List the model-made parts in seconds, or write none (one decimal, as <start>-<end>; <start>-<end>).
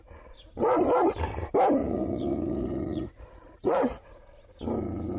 1.8-4.6